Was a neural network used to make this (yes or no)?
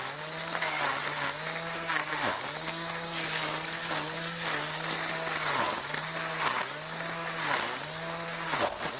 no